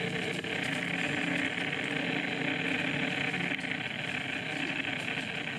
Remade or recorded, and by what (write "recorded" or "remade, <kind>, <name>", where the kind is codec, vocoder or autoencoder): recorded